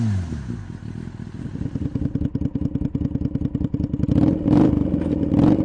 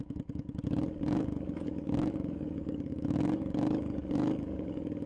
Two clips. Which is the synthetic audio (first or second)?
second